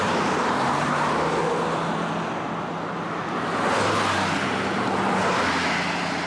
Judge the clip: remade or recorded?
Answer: recorded